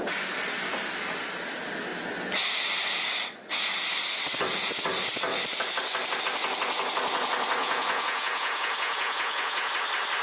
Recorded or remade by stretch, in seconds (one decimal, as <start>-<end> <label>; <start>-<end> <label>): 0.0-7.6 recorded; 7.6-9.7 remade; 9.7-10.2 recorded